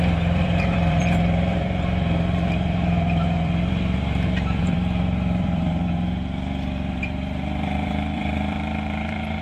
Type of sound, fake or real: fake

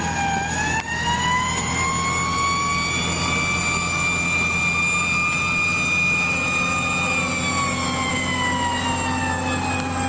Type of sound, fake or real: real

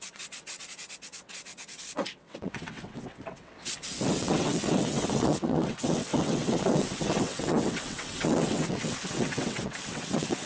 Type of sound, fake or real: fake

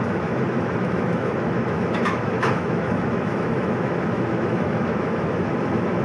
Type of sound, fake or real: fake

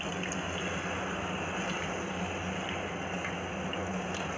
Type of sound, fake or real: real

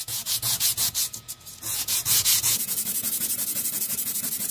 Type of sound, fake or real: fake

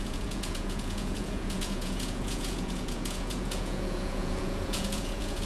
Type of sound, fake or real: fake